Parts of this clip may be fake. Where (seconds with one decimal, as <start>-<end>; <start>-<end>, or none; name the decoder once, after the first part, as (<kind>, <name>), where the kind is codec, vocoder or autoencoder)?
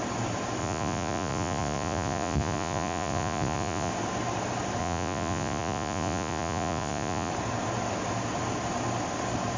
0.6-3.9 (vocoder, Vocos); 4.8-7.3